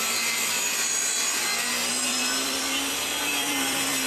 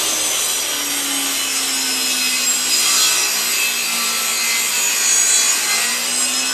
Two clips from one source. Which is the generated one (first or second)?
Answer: first